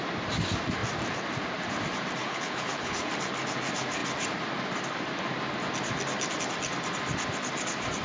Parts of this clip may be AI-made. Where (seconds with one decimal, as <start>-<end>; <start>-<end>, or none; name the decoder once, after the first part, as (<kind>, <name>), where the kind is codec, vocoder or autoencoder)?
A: 2.2-3.1 (codec, HILCodec)